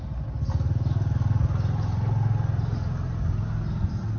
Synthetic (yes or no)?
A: no